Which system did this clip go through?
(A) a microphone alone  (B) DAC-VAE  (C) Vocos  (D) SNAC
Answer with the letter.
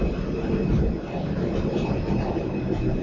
A